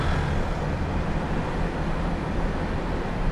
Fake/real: real